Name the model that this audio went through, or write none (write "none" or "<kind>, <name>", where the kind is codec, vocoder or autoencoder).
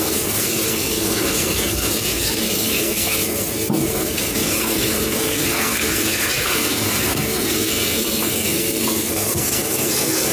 codec, SNAC